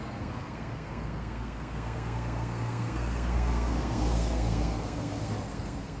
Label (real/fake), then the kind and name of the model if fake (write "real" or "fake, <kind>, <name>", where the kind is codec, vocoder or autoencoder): fake, codec, SNAC